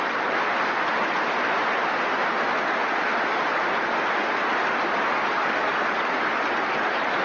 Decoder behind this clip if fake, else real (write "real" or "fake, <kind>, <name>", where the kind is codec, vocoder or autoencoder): real